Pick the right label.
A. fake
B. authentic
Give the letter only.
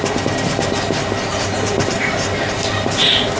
A